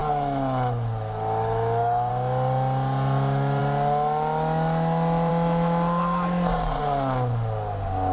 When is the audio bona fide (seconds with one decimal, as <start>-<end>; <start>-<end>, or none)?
2.1-8.1